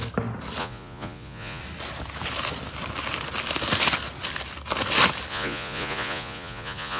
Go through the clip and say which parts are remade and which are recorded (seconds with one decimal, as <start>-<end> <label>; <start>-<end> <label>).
0.0-0.6 recorded; 0.6-1.6 remade; 1.6-5.3 recorded; 5.3-7.0 remade